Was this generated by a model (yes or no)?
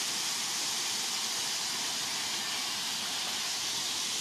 no